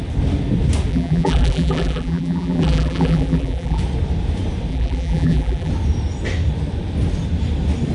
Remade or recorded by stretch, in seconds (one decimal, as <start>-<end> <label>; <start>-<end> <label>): 0.0-0.9 recorded; 0.9-3.8 remade; 3.8-4.7 recorded; 4.7-5.7 remade; 5.7-7.9 recorded